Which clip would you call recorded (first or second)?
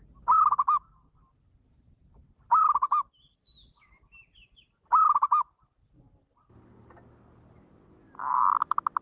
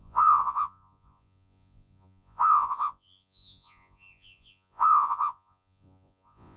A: first